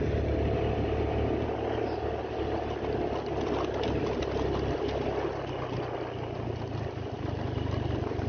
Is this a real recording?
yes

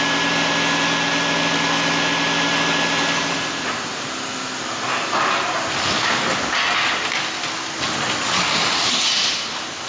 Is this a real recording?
yes